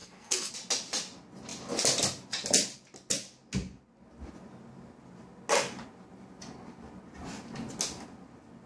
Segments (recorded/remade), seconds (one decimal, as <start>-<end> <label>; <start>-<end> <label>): 0.0-0.5 remade; 0.5-8.7 recorded